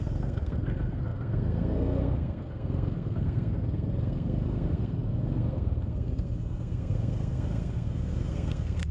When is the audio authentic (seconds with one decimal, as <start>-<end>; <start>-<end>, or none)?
none